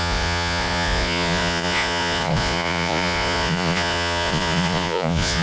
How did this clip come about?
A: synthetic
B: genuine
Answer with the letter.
A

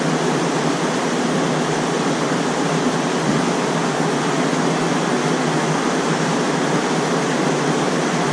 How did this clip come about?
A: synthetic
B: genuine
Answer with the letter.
B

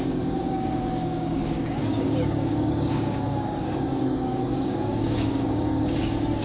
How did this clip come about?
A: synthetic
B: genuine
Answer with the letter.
A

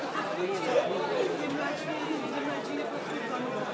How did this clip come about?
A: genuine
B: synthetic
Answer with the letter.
A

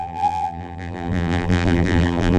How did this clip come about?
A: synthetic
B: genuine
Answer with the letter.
A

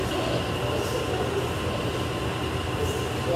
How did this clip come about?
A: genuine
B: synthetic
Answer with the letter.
A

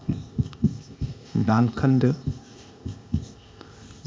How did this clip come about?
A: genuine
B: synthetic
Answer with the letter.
B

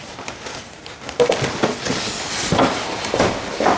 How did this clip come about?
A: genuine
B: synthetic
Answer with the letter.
A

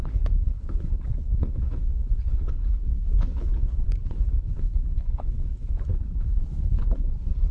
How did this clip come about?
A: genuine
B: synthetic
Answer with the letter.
B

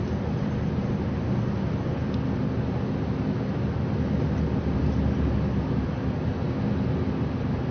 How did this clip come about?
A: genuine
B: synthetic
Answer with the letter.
A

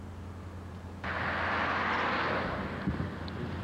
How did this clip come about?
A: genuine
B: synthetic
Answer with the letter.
A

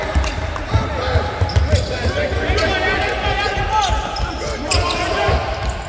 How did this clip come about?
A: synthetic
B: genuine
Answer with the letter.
B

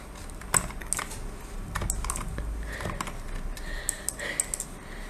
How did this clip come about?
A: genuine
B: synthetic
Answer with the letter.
A